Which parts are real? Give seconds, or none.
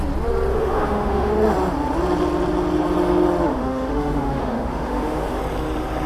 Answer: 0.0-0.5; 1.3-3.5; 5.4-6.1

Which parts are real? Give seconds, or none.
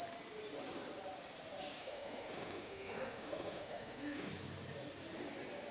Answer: 0.0-1.8; 4.3-5.7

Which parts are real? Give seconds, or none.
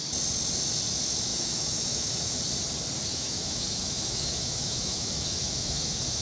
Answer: 0.0-1.3; 2.4-3.1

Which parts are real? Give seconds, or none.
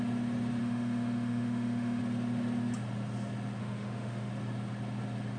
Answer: 0.0-0.6; 2.0-3.6; 4.3-5.4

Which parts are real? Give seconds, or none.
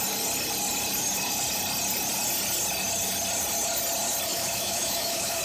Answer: 0.0-4.3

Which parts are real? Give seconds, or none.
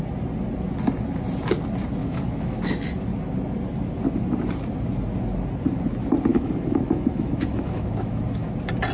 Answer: 0.0-2.0; 2.6-6.3; 8.5-8.9